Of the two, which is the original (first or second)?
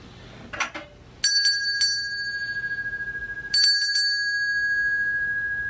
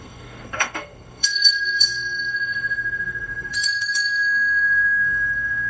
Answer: first